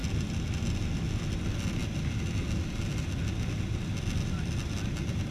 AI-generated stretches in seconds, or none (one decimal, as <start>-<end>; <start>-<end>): none